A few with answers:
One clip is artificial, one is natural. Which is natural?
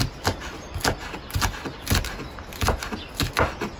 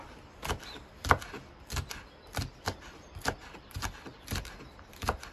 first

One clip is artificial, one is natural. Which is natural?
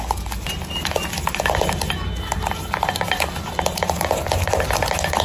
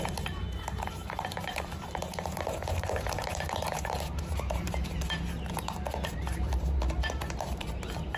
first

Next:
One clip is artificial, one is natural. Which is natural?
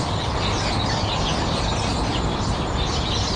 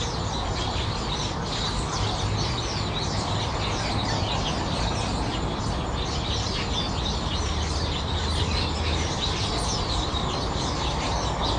second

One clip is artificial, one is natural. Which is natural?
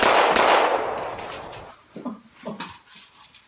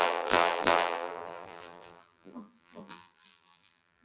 first